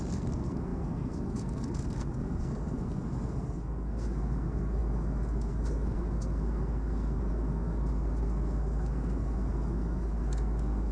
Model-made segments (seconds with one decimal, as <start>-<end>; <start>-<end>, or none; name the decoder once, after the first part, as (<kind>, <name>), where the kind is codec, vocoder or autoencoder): 0.0-10.9 (codec, SNAC)